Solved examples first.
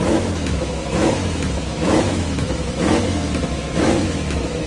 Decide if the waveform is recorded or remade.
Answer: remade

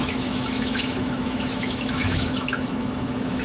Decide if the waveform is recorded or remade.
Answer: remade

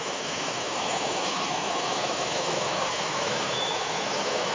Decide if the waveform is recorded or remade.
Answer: remade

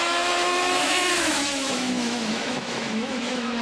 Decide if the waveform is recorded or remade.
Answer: remade